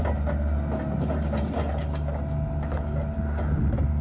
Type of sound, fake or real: real